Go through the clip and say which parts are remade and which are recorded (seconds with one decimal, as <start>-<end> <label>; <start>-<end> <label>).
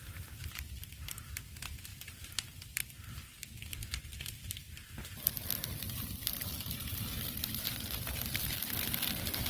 0.0-3.3 remade; 3.3-4.0 recorded; 4.0-9.5 remade